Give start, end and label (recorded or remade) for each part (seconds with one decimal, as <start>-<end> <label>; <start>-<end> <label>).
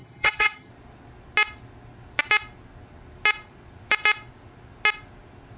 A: 0.0-0.7 remade; 0.7-5.6 recorded